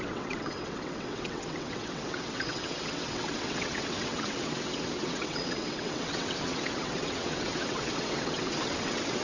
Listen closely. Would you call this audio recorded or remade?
remade